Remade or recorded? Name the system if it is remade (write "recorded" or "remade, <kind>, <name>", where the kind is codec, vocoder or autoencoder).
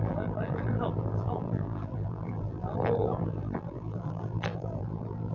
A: remade, vocoder, BigVGAN v2